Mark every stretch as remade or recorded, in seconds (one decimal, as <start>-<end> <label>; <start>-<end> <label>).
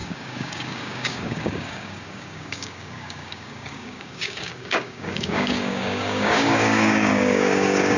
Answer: 0.0-8.0 remade